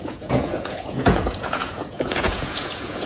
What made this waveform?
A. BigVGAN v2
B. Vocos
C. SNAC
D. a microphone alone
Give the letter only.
B